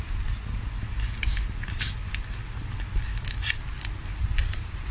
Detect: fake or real real